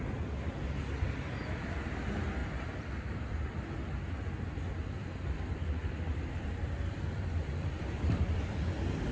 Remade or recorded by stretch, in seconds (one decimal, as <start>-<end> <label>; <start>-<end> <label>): 0.0-2.4 recorded; 2.4-3.5 remade; 3.5-5.0 recorded; 5.0-9.1 remade